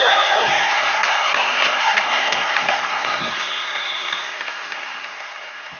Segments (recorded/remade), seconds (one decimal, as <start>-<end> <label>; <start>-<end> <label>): 0.0-5.8 remade